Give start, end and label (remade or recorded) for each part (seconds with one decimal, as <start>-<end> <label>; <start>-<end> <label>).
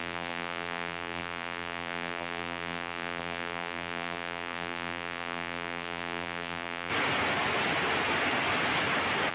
0.0-6.9 remade; 6.9-9.3 recorded